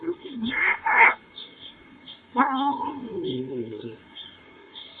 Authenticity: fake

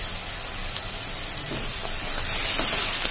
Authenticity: real